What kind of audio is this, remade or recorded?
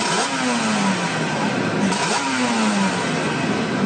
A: recorded